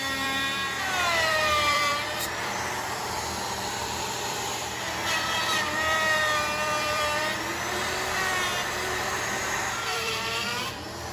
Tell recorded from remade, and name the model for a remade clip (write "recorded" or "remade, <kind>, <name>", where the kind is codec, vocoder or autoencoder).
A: remade, vocoder, BigVGAN v2